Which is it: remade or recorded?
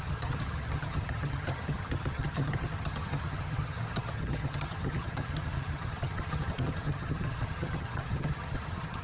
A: remade